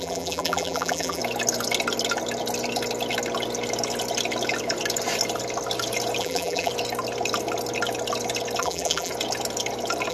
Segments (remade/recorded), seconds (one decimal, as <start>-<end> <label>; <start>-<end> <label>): 0.0-1.2 remade; 1.2-6.2 recorded; 6.2-6.7 remade; 6.7-8.6 recorded; 8.6-9.1 remade; 9.1-10.1 recorded